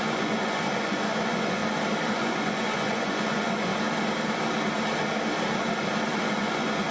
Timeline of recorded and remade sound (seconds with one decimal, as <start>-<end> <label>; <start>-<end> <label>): 0.0-1.6 remade; 1.6-2.1 recorded; 2.1-3.7 remade; 3.7-6.2 recorded; 6.2-6.9 remade